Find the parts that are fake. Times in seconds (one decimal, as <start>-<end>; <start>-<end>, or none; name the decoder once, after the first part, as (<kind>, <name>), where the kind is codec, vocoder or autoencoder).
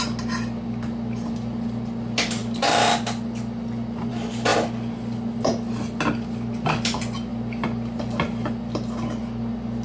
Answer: none